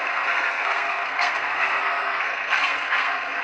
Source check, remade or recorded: remade